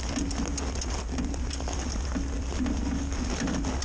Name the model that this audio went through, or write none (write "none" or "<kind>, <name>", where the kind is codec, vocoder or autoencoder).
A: none